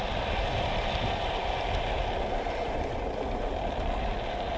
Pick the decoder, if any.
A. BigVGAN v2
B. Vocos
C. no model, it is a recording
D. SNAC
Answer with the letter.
C